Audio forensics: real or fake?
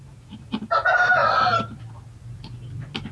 real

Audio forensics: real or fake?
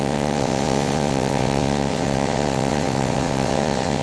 fake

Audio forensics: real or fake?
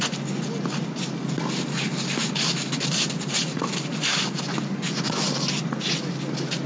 real